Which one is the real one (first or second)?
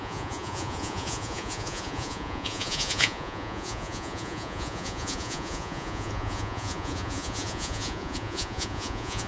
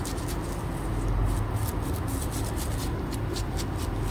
second